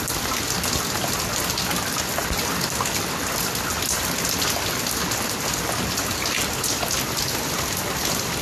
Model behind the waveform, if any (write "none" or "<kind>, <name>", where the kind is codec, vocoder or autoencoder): none